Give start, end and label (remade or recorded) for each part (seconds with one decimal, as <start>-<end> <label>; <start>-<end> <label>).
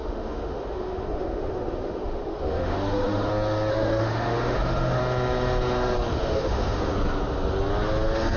0.0-3.3 remade; 3.3-3.7 recorded; 3.7-5.0 remade; 5.0-6.1 recorded; 6.1-6.9 remade; 6.9-8.4 recorded